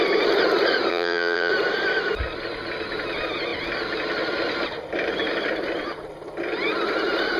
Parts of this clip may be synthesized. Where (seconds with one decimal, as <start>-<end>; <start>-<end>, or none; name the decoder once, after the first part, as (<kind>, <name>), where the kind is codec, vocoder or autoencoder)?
0.9-1.5 (vocoder, BigVGAN v2)